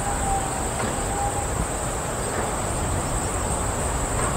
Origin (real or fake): real